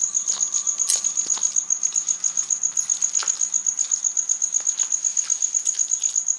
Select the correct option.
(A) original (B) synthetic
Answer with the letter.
A